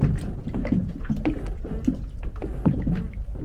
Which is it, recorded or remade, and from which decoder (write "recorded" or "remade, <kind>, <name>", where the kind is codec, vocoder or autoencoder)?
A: remade, vocoder, BigVGAN v2